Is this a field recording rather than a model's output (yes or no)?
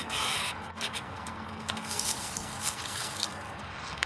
no